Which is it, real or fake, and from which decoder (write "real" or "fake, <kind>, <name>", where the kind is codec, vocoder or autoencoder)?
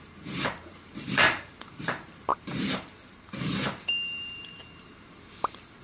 fake, vocoder, BigVGAN v2